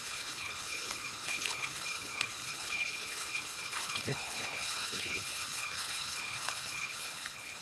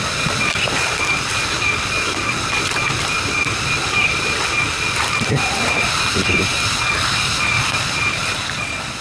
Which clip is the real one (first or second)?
second